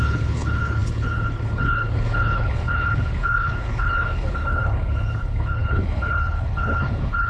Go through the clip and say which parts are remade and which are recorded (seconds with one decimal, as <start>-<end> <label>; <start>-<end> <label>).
0.0-7.3 remade